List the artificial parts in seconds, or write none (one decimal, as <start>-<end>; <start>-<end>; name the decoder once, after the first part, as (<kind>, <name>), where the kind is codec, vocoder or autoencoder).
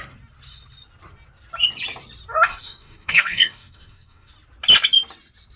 2.5-4.3 (codec, DAC)